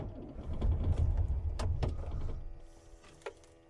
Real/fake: real